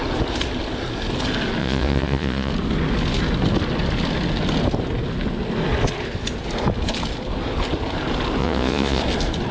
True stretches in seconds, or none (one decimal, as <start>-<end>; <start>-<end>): 0.0-1.6; 2.5-8.4; 9.0-9.5